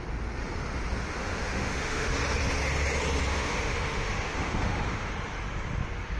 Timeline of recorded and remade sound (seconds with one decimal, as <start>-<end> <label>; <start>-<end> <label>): 0.0-1.2 recorded; 1.2-2.1 remade; 2.1-3.3 recorded; 3.3-5.1 remade; 5.1-6.2 recorded